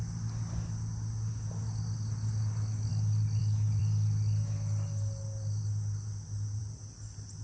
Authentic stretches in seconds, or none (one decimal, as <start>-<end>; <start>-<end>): 0.0-7.4